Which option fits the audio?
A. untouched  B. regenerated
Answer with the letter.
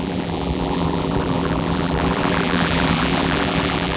B